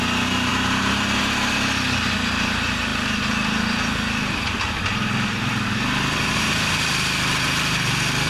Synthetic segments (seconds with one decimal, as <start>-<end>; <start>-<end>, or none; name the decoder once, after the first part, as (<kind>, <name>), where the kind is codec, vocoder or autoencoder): none